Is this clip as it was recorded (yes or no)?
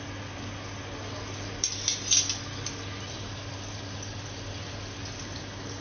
yes